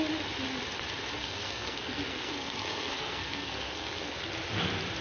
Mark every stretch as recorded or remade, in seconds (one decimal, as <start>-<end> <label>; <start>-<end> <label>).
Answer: 0.0-1.2 recorded; 1.2-4.2 remade; 4.2-5.0 recorded